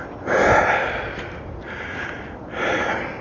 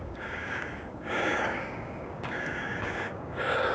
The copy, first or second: second